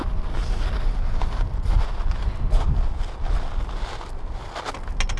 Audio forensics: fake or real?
real